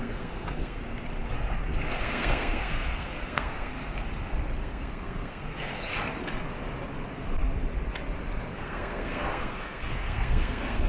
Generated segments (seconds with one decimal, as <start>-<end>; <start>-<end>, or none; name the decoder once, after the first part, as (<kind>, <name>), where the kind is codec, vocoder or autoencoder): 0.0-0.8 (codec, SNAC); 2.0-3.7; 4.6-5.9; 8.5-10.9